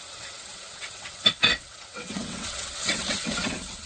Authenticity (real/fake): fake